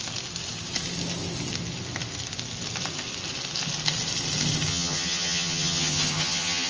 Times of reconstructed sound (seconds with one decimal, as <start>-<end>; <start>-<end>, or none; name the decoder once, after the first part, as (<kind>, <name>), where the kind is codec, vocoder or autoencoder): 4.7-6.7 (vocoder, HiFi-GAN)